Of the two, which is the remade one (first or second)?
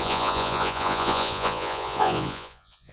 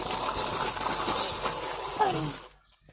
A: first